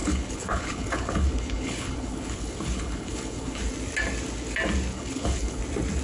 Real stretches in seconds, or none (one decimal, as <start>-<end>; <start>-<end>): 3.6-4.9; 5.6-6.0